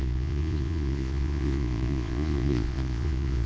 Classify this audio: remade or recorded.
remade